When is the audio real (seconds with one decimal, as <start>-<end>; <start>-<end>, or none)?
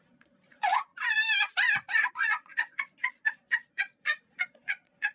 0.9-2.1